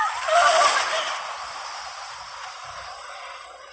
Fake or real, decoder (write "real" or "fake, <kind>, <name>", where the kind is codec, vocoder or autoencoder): real